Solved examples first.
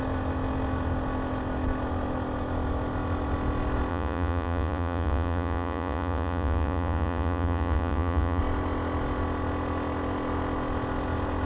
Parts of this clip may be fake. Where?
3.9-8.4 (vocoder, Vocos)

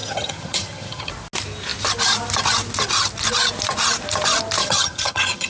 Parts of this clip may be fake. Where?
0.0-1.1 (vocoder, HiFi-GAN); 4.6-5.5